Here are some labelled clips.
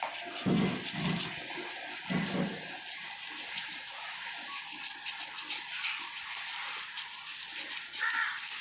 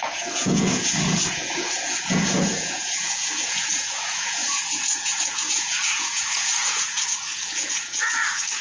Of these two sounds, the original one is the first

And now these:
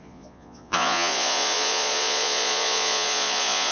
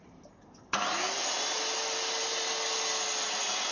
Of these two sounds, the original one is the second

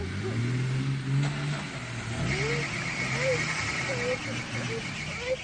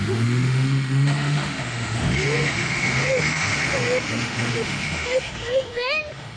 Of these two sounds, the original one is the first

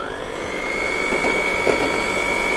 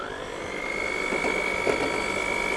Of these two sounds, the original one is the second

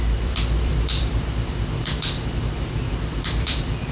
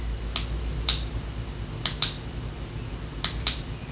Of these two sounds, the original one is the second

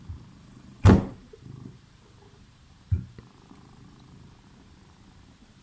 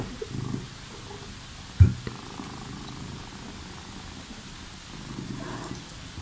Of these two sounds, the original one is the second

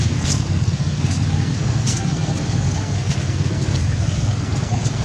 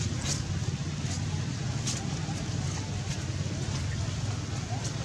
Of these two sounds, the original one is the second